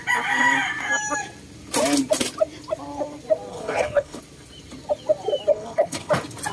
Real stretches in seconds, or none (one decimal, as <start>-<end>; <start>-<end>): 0.0-3.5; 4.2-5.5; 6.1-6.5